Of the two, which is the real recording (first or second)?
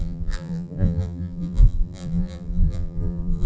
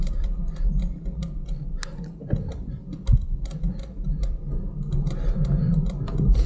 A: second